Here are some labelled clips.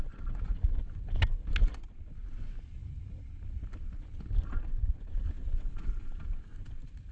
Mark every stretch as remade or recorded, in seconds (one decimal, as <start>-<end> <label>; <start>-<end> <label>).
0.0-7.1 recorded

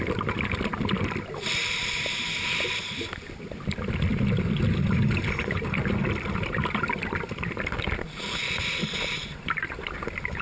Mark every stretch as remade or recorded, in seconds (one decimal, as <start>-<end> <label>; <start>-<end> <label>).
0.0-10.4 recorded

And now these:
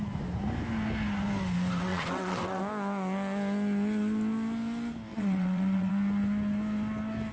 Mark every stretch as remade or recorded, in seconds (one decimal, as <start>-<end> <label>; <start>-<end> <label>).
0.0-1.9 recorded; 1.9-2.6 remade; 2.6-5.1 recorded; 5.1-5.9 remade; 5.9-7.3 recorded

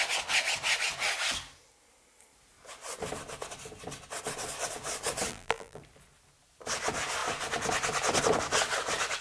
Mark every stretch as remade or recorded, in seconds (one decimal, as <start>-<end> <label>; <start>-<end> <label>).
0.0-5.3 recorded; 5.3-5.8 remade; 5.8-9.2 recorded

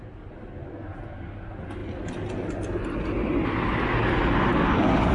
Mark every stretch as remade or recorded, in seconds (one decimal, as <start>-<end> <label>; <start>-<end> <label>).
0.0-4.5 recorded; 4.5-5.1 remade

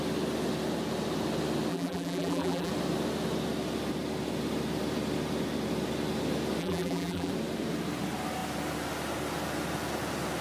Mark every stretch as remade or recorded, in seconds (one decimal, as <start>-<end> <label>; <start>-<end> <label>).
0.0-1.7 recorded; 1.7-2.7 remade; 2.7-6.6 recorded; 6.6-7.3 remade; 7.3-10.4 recorded